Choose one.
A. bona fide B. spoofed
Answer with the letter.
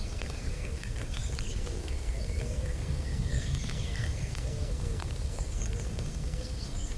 B